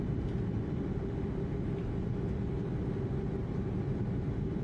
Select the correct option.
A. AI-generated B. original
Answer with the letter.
B